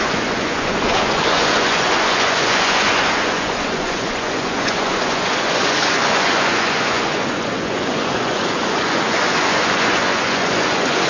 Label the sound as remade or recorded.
remade